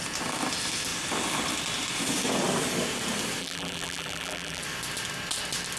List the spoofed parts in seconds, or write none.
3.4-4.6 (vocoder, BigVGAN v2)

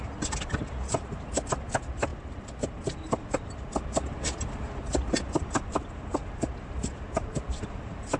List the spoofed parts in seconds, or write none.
none